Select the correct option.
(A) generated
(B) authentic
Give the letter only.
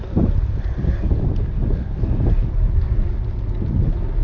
B